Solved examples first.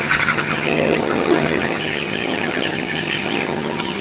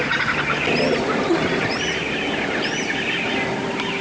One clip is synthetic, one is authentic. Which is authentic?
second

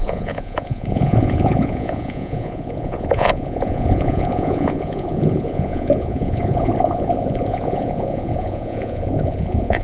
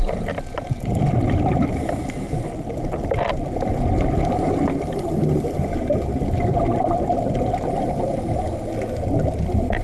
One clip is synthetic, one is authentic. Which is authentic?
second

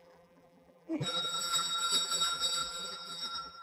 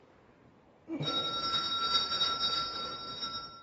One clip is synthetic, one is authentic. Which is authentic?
second